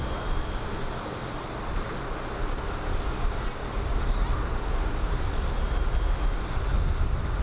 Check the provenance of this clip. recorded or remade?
recorded